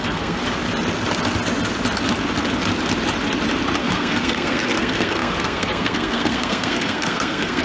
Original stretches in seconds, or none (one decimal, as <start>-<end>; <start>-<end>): 0.4-3.8